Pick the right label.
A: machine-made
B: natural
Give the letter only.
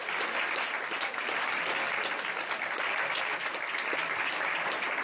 B